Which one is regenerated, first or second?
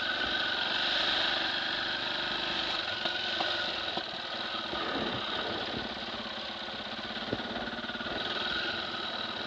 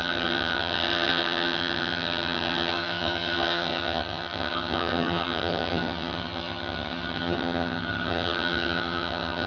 second